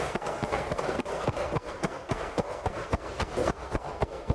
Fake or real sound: fake